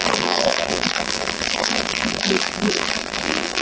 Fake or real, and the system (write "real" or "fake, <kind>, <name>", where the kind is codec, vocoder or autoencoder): fake, vocoder, BigVGAN v2